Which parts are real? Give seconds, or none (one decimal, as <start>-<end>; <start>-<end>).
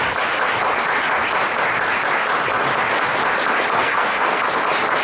0.0-3.8; 4.4-5.0